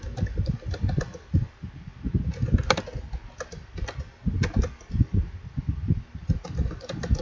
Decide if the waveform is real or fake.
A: real